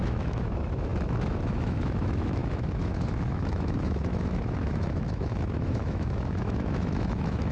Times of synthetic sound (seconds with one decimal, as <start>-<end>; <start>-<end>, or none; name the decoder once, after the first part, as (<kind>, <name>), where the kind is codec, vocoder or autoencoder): 0.0-7.5 (autoencoder, DAC-VAE)